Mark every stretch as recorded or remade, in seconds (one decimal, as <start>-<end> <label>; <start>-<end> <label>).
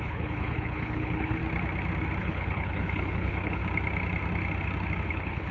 0.0-1.4 remade; 1.4-2.2 recorded; 2.2-3.6 remade; 3.6-5.1 recorded; 5.1-5.5 remade